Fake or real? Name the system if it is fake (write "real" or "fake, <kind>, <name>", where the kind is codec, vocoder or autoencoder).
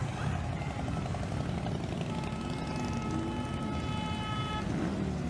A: real